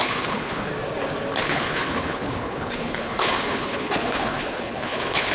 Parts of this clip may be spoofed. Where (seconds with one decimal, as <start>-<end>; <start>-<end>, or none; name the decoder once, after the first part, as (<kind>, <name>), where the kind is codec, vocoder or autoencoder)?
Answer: 0.0-0.7 (codec, HILCodec); 1.4-5.3